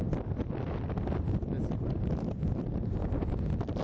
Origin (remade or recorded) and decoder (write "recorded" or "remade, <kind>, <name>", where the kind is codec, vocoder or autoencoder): recorded